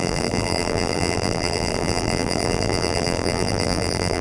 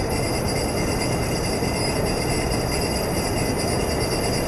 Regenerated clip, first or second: first